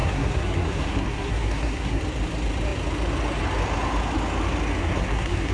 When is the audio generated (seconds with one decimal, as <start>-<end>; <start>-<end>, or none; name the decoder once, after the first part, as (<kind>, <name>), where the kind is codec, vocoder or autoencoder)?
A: 0.0-2.0 (codec, SNAC); 4.8-5.5